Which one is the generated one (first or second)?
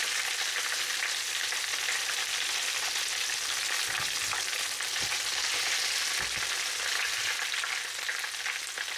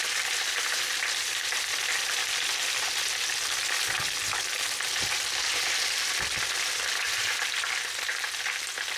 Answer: second